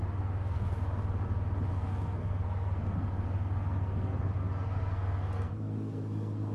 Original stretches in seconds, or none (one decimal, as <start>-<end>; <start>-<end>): 1.0-1.7